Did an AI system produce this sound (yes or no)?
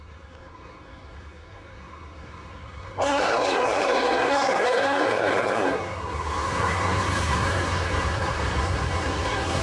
yes